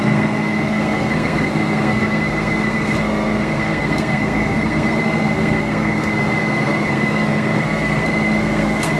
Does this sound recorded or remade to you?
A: remade